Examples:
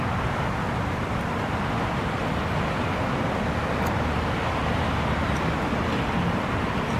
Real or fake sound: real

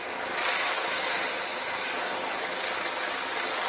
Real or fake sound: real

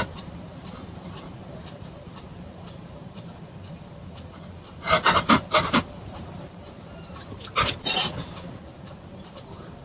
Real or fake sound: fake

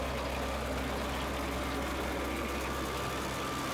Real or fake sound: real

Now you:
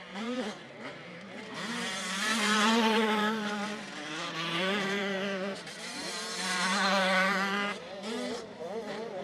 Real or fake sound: fake